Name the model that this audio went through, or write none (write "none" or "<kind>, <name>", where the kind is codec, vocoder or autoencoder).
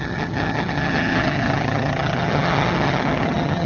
vocoder, HiFi-GAN